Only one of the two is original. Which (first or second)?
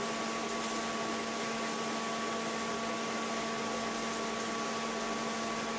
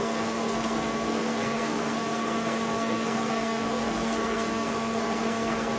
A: first